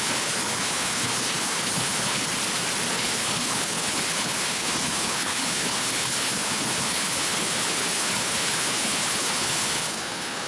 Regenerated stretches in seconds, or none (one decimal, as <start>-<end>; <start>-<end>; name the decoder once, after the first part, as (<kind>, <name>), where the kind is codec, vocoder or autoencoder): 0.0-2.3 (codec, HILCodec); 2.9-10.5